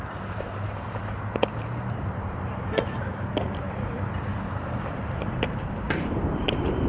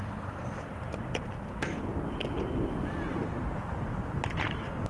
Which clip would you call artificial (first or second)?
first